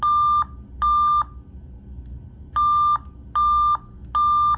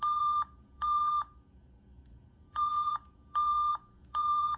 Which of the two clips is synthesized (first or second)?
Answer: second